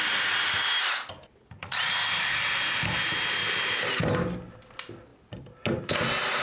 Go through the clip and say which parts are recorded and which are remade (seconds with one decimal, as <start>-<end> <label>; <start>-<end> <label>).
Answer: 0.0-1.3 recorded; 1.3-1.9 remade; 1.9-6.4 recorded